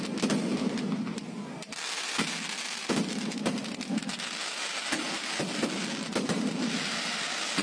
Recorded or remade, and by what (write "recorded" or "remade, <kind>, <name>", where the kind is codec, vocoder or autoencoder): recorded